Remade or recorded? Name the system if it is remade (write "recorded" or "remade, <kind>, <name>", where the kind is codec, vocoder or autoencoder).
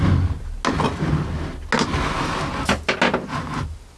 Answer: recorded